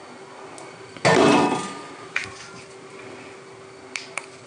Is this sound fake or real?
real